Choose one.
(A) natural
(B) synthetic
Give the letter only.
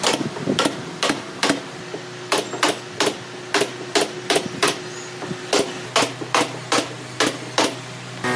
A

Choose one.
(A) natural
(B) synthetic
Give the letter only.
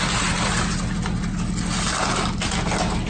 A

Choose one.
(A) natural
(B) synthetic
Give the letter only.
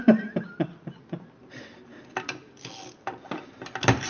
A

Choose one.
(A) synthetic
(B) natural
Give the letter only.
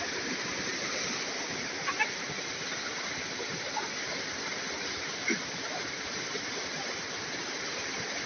B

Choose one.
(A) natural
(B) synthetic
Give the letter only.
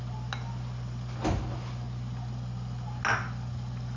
A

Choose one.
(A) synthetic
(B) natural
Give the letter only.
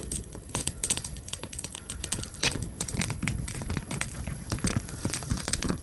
A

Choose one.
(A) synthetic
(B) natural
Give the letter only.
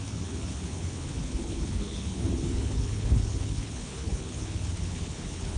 A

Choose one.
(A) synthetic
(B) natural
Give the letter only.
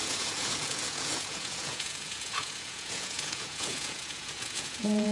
A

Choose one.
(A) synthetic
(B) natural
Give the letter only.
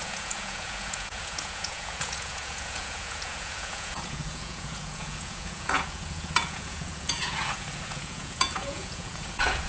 A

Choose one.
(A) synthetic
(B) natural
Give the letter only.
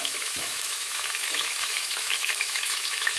A